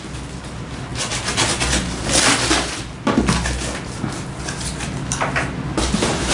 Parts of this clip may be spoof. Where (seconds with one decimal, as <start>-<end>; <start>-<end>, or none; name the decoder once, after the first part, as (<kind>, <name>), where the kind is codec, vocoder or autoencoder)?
none